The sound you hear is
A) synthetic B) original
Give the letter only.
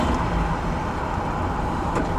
A